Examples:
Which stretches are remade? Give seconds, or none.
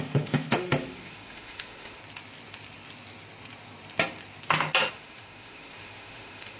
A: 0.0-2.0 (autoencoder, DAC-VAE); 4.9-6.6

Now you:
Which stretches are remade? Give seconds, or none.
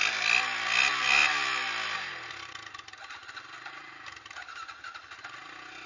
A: none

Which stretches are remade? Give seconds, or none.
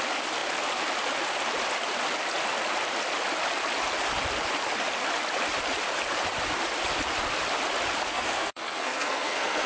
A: 8.1-9.7 (codec, SNAC)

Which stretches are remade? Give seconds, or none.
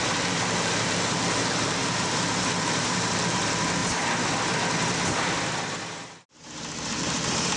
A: 0.0-1.8 (vocoder, BigVGAN v2); 2.4-3.8; 7.0-7.6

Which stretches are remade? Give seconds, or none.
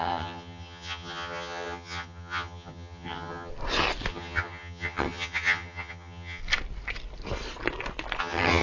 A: 0.0-3.5 (vocoder, HiFi-GAN); 4.1-6.4; 8.2-8.6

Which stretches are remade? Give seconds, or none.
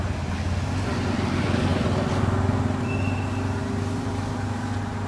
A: none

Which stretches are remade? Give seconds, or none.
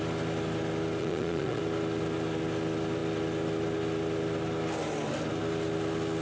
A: 1.0-1.6 (vocoder, Vocos)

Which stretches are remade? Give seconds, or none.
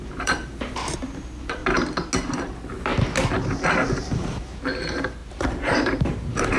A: 0.0-1.6 (vocoder, BigVGAN v2); 2.4-2.9; 3.9-6.6